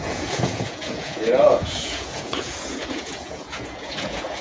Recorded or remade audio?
remade